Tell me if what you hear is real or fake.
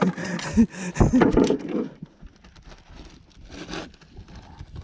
real